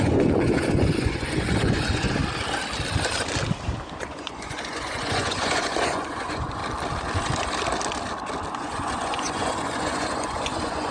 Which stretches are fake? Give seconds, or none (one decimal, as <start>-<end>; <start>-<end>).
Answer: 0.0-2.2; 4.0-6.6; 8.5-10.9